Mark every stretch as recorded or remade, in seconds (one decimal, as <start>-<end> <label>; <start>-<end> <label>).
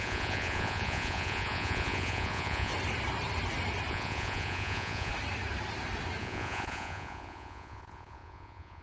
0.0-2.7 remade; 2.7-3.9 recorded; 3.9-5.1 remade; 5.1-6.2 recorded; 6.2-8.8 remade